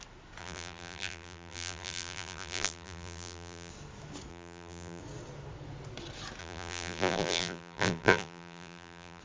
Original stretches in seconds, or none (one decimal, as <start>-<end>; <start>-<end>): 0.0-0.4; 3.7-4.3; 5.0-6.4